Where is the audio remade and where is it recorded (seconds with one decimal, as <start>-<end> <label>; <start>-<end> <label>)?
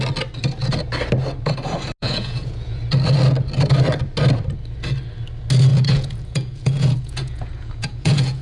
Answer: 0.0-2.0 recorded; 2.0-2.8 remade; 2.8-5.7 recorded; 5.7-8.4 remade